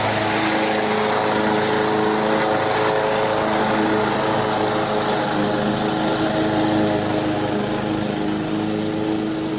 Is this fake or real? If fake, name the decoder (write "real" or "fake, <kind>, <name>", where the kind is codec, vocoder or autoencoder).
real